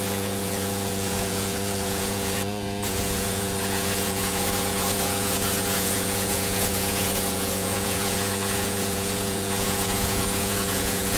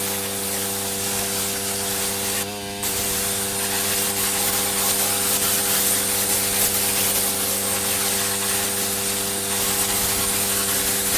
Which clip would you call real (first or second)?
second